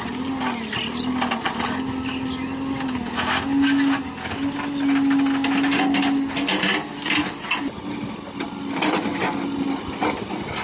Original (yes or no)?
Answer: yes